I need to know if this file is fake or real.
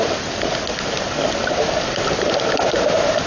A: real